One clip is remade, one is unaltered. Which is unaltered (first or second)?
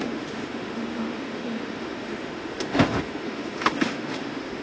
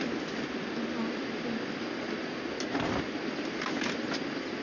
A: second